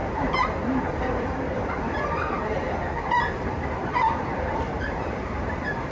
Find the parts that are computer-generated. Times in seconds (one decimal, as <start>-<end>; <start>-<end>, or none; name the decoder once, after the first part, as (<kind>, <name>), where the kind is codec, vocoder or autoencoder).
0.0-3.0 (vocoder, BigVGAN v2); 4.3-5.9